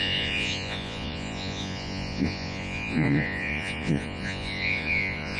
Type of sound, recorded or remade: remade